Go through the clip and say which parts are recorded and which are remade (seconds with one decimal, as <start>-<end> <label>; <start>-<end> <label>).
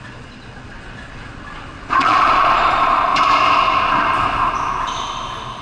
0.0-3.1 remade; 3.1-5.6 recorded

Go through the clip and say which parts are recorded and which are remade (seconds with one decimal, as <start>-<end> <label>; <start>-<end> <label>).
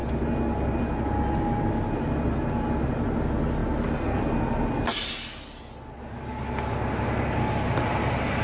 0.0-8.4 recorded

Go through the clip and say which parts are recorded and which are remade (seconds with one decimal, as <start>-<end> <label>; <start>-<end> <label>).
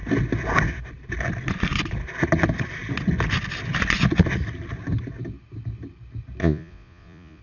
0.0-6.4 recorded; 6.4-7.4 remade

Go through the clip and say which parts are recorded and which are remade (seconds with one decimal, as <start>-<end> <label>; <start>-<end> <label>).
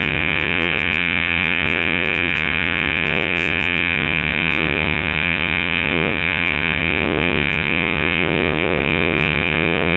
0.0-10.0 remade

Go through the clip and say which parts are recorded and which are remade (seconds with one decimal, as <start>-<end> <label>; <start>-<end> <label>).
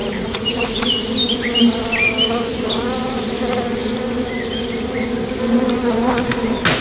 0.0-0.8 remade; 0.8-6.8 recorded